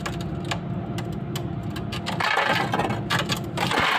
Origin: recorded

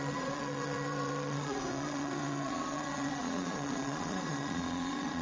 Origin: remade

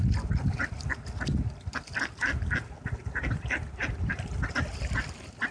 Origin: recorded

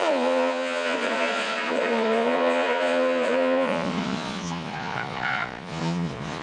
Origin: remade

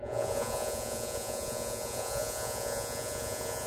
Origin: remade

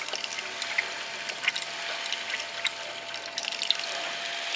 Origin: recorded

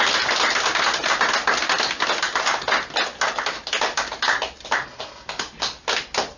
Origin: recorded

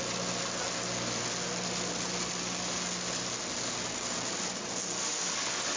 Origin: recorded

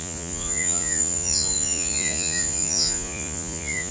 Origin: remade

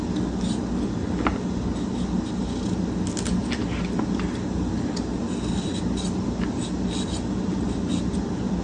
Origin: recorded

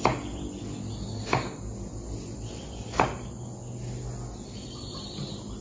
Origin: recorded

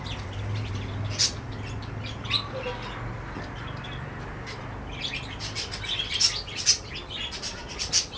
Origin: recorded